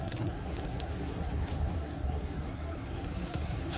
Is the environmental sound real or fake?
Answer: fake